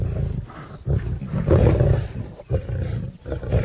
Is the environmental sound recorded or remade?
recorded